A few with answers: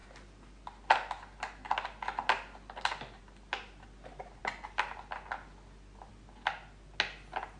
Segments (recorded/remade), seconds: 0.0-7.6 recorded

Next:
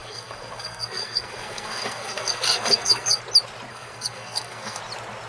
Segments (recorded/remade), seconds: 0.0-3.2 remade; 3.2-3.7 recorded; 3.7-4.8 remade; 4.8-5.3 recorded

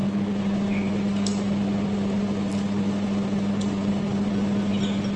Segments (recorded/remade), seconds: 0.0-5.2 recorded